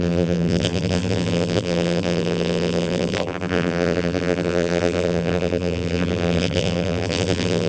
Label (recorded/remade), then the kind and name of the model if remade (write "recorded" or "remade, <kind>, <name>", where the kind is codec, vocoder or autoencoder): remade, vocoder, BigVGAN v2